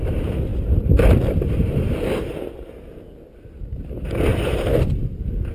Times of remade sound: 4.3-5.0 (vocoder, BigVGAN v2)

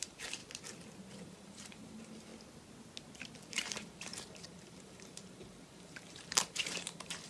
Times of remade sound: 0.0-0.4 (vocoder, BigVGAN v2); 1.2-2.3; 3.5-7.3

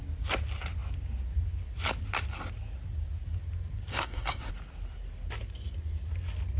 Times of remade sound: 3.9-4.5 (codec, SNAC)

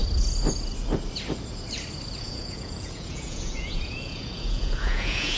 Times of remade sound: 2.2-5.4 (vocoder, Vocos)